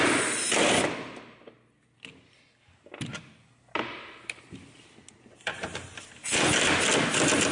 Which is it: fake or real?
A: real